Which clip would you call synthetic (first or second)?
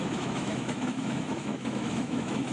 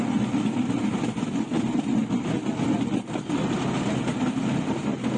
first